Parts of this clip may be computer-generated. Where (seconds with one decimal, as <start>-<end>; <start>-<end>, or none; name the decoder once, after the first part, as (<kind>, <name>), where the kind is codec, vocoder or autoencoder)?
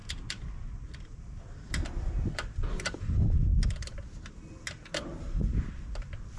none